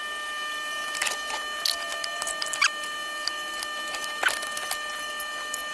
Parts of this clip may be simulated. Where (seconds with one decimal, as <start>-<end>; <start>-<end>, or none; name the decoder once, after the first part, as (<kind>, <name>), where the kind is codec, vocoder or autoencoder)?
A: none